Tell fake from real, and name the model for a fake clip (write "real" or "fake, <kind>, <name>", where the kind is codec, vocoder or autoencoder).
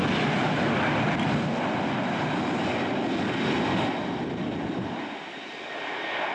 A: real